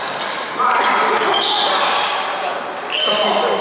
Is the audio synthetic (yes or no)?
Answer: no